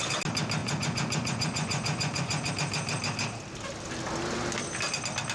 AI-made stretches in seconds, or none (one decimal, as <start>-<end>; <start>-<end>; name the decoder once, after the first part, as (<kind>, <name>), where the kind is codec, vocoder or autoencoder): 0.6-2.5 (vocoder, Vocos)